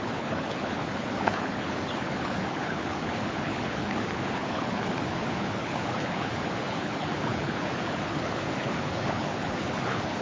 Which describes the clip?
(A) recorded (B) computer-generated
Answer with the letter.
B